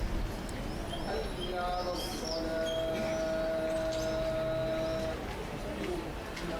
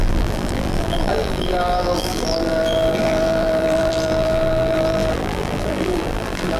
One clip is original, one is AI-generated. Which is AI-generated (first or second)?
second